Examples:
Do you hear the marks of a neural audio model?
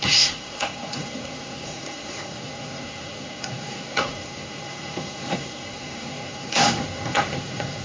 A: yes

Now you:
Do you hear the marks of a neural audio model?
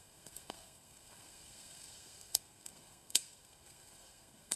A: yes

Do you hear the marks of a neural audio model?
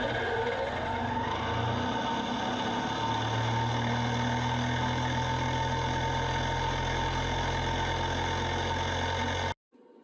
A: no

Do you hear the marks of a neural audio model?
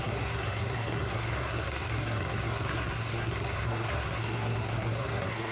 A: yes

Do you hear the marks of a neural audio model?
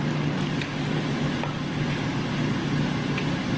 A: no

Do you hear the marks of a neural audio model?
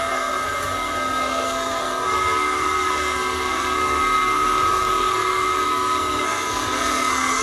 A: yes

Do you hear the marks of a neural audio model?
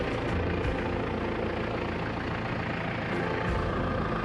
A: no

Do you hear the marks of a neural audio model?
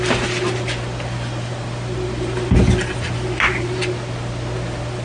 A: no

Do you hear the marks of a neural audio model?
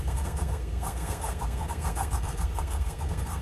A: yes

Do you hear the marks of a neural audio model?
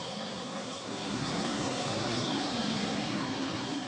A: yes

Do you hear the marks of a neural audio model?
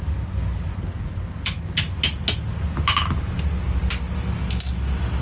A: no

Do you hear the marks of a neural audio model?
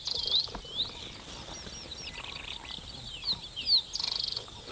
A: no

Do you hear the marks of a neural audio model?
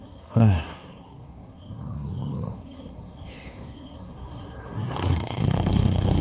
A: yes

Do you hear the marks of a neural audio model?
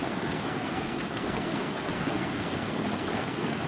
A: yes